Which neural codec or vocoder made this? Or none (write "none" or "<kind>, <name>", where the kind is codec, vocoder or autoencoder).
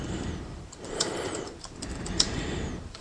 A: vocoder, BigVGAN v2